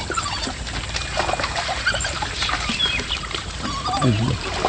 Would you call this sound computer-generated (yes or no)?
yes